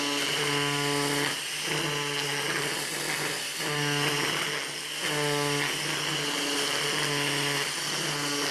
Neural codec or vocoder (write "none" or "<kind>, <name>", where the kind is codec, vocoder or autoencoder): none